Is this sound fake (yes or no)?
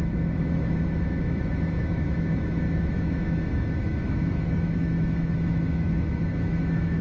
yes